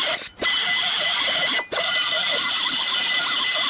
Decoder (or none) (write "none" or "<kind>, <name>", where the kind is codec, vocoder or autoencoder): none